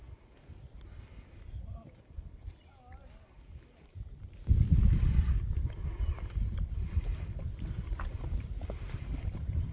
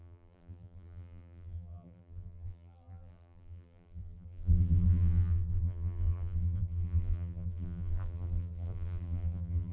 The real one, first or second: first